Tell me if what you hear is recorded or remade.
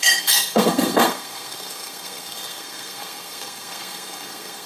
remade